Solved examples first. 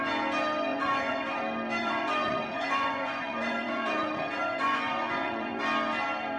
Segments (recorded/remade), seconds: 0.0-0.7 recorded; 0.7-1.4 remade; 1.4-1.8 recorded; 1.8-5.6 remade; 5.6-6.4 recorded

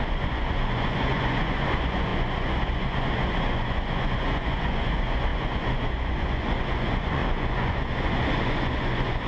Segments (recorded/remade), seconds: 0.0-9.3 remade

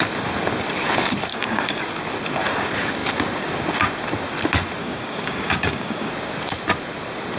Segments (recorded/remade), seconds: 0.0-1.3 recorded; 1.3-1.8 remade; 1.8-4.8 recorded; 4.8-6.1 remade; 6.1-7.4 recorded

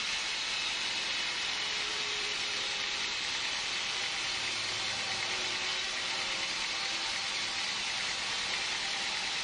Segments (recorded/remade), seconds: 0.0-1.9 recorded; 1.9-4.0 remade; 4.0-9.4 recorded